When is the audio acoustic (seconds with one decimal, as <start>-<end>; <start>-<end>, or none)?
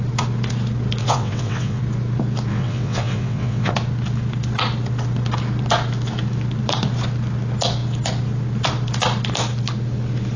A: 0.0-1.0; 1.8-2.5; 3.7-10.4